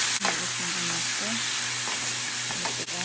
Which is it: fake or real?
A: real